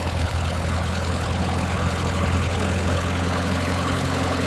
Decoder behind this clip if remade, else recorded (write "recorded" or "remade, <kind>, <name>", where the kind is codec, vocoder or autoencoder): remade, codec, HILCodec